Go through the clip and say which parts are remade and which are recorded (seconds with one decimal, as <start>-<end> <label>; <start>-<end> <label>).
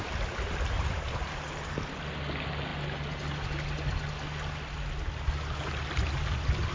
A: 0.0-6.7 recorded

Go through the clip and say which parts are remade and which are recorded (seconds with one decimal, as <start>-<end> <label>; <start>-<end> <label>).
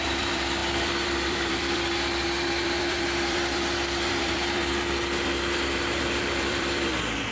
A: 0.0-4.6 remade; 4.6-6.0 recorded; 6.0-7.3 remade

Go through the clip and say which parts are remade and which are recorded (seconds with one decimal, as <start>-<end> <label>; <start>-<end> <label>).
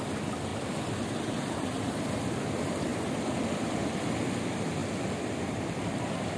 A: 0.0-4.8 remade; 4.8-5.4 recorded; 5.4-6.4 remade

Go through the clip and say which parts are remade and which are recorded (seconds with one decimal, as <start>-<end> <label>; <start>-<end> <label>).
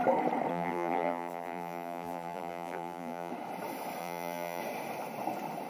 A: 0.0-0.5 recorded; 0.5-3.3 remade; 3.3-4.0 recorded; 4.0-4.6 remade; 4.6-5.7 recorded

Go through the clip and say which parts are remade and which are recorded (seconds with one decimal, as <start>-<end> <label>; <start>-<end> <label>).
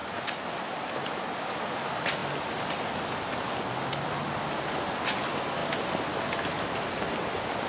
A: 0.0-7.7 recorded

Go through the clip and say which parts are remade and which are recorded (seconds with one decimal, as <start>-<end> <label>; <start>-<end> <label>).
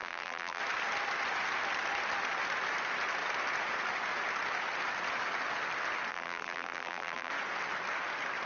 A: 0.0-0.6 remade; 0.6-6.1 recorded; 6.1-7.3 remade; 7.3-8.5 recorded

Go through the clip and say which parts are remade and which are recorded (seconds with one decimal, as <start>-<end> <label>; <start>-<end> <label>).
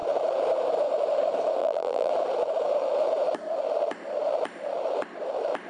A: 0.0-1.6 recorded; 1.6-2.1 remade; 2.1-5.7 recorded